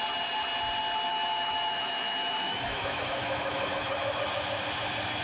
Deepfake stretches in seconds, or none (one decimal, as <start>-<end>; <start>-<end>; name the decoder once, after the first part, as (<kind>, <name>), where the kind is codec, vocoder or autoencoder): 1.1-4.2 (autoencoder, DAC-VAE)